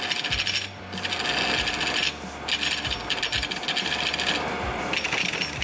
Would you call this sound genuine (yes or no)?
yes